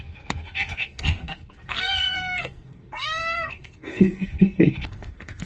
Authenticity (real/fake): fake